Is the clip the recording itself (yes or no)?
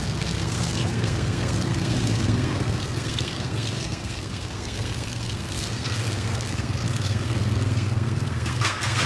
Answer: no